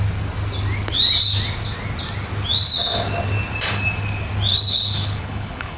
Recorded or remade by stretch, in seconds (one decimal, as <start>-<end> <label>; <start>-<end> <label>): 0.0-4.5 recorded; 4.5-5.8 remade